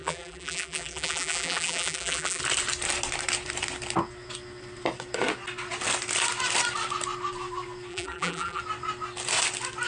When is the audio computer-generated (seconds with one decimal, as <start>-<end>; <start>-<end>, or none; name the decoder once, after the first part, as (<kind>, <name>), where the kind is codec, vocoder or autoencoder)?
0.0-2.4 (vocoder, BigVGAN v2); 7.9-8.6

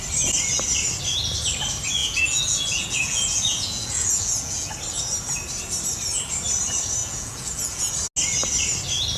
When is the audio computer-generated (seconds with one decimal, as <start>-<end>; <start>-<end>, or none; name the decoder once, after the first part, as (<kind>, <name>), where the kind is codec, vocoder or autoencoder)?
2.0-4.7 (vocoder, Vocos); 7.0-7.9

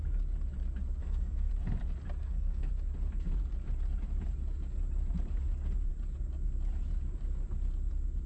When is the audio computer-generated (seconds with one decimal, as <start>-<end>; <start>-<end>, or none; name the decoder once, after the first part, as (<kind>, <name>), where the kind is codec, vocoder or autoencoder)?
1.0-1.5 (codec, SNAC); 2.2-2.7

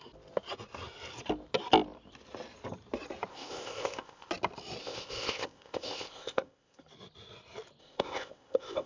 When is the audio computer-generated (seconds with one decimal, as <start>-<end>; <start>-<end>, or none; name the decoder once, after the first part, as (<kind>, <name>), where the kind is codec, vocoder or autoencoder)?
3.3-4.3 (codec, ZipCodec); 4.8-6.8; 7.8-8.9

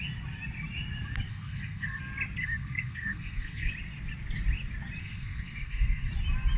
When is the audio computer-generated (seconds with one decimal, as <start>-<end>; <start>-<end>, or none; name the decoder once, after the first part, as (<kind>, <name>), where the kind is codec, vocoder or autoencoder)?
1.3-2.0 (codec, SNAC); 2.4-3.7; 5.0-6.1

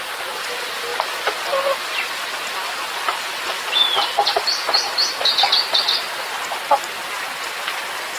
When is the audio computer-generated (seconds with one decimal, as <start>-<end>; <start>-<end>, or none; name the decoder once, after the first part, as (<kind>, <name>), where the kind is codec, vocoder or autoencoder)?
0.9-5.8 (vocoder, BigVGAN v2)

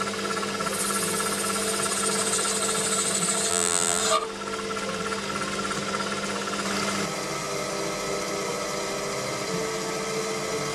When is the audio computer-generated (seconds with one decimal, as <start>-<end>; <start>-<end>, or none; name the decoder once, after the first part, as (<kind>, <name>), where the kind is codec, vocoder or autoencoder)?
3.5-4.0 (vocoder, BigVGAN v2)